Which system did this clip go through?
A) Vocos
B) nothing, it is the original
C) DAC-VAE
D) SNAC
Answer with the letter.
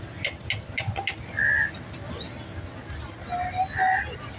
B